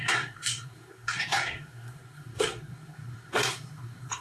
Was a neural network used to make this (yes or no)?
yes